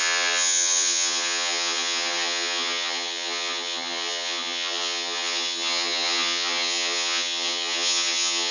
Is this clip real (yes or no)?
no